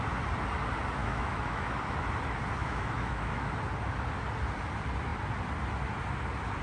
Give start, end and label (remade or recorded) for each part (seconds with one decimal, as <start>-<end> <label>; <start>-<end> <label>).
0.0-1.0 recorded; 1.0-1.7 remade; 1.7-2.6 recorded; 2.6-3.5 remade; 3.5-6.6 recorded